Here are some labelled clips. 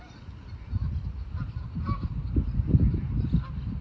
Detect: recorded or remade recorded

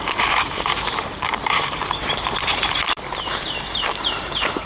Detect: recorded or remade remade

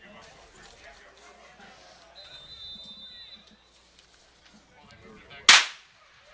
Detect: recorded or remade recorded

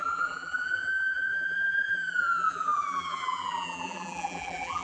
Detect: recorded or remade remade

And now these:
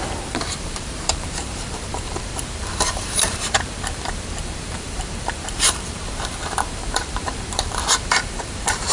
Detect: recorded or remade remade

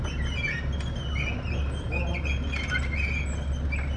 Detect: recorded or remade recorded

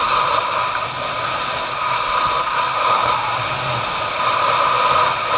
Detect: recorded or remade recorded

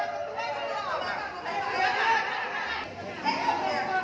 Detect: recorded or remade recorded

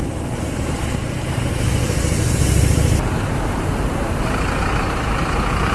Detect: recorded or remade remade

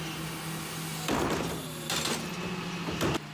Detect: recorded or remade recorded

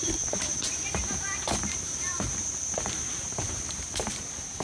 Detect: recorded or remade remade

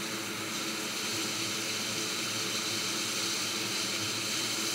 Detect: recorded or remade recorded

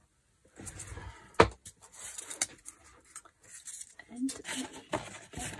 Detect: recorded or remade recorded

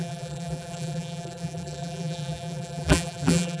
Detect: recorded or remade remade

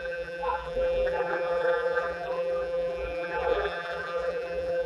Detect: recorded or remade remade